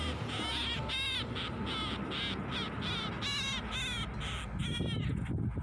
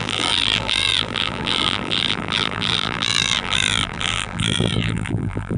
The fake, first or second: second